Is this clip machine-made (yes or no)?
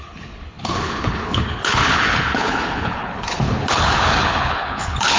yes